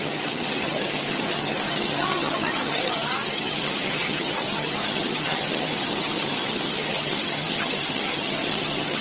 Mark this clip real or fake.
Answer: fake